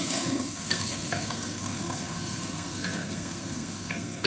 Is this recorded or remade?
remade